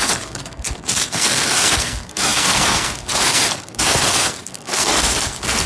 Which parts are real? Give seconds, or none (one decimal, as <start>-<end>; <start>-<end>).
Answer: none